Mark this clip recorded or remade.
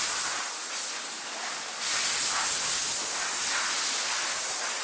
recorded